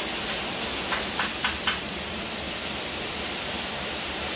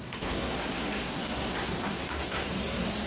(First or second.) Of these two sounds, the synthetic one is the second